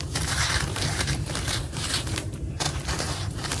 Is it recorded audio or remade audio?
remade